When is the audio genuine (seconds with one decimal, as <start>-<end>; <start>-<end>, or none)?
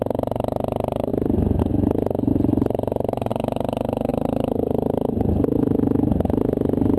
0.0-1.1; 1.6-2.3; 3.3-4.1; 5.3-7.0